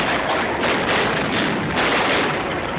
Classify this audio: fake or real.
real